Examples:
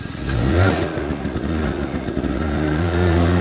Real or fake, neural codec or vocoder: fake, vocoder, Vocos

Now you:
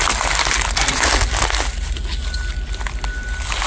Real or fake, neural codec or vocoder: real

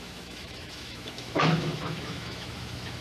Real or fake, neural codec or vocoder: fake, autoencoder, DAC-VAE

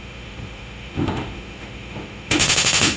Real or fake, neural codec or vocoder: fake, autoencoder, DAC-VAE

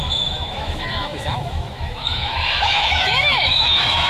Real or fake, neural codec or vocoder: fake, autoencoder, DAC-VAE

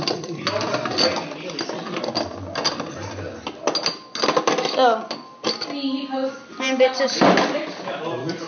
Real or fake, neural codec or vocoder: real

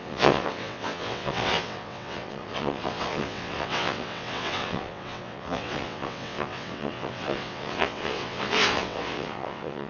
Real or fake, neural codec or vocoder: fake, vocoder, WaveNeXt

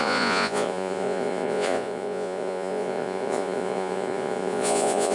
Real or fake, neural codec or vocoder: fake, vocoder, Vocos